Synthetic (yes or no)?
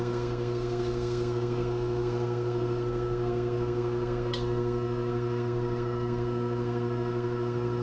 yes